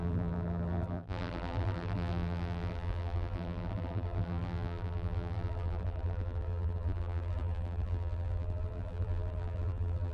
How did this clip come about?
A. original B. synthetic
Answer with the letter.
B